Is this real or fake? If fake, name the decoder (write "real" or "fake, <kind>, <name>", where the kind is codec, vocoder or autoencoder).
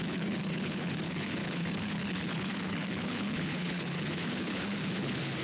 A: fake, codec, HILCodec